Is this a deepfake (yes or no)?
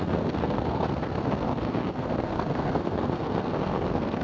yes